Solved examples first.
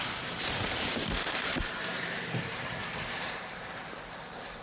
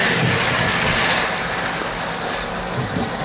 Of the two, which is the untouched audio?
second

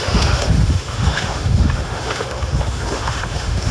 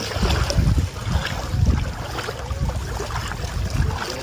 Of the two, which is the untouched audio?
second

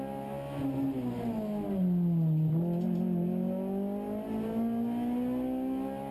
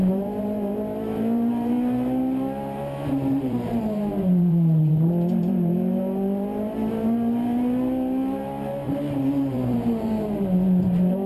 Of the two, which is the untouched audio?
first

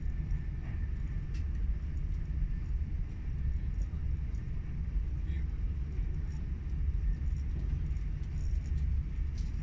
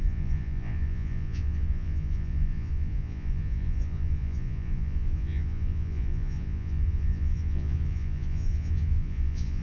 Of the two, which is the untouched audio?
first